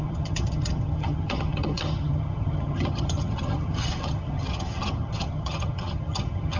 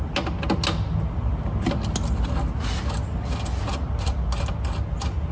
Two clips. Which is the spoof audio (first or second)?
first